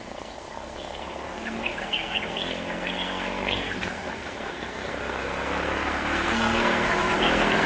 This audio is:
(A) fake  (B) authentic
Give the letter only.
A